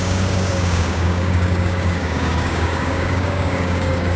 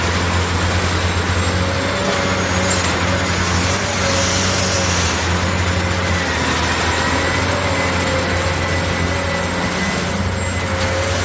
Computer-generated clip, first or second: first